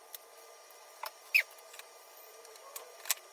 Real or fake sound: real